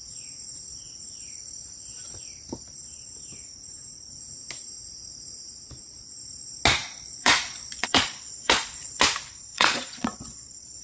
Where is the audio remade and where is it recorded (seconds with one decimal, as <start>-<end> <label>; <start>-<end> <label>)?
0.0-6.8 recorded; 6.8-9.0 remade; 9.0-9.5 recorded; 9.5-10.8 remade